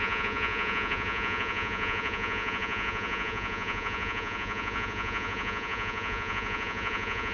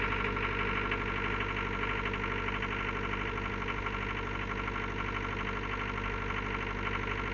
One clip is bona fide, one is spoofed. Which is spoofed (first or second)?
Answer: first